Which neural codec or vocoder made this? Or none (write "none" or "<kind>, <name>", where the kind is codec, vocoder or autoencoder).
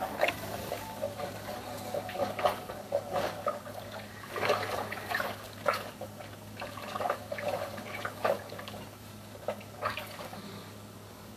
codec, DAC